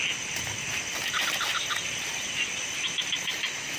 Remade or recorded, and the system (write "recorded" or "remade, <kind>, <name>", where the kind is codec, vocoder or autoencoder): recorded